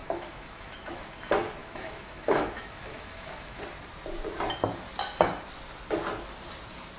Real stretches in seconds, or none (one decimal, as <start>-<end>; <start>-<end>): 1.1-1.6; 3.6-7.0